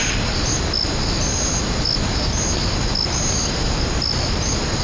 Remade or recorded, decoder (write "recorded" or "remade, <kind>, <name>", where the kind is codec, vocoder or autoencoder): recorded